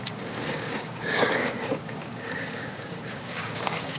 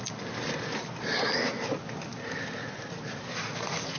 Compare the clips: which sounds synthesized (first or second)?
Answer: first